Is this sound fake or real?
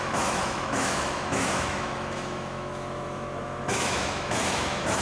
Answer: fake